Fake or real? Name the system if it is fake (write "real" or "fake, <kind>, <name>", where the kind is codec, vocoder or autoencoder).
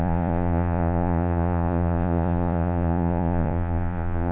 fake, vocoder, Vocos